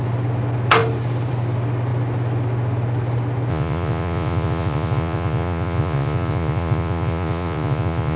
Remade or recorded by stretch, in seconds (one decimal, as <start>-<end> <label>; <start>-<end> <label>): 0.0-3.5 recorded; 3.5-8.2 remade